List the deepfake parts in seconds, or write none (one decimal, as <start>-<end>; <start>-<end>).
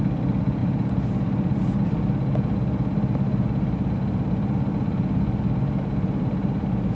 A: none